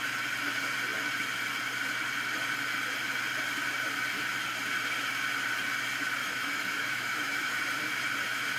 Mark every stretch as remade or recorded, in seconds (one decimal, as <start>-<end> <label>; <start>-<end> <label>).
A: 0.0-6.2 recorded; 6.2-7.6 remade; 7.6-8.6 recorded